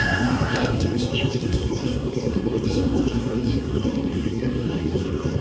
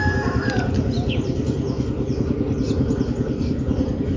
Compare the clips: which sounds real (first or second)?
second